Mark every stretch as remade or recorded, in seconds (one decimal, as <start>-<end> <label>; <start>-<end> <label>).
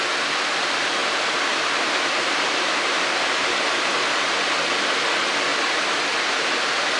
0.0-1.0 recorded; 1.0-4.8 remade; 4.8-5.5 recorded; 5.5-7.0 remade